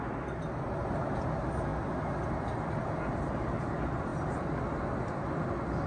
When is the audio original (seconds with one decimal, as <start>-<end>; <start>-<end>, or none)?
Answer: 0.0-5.9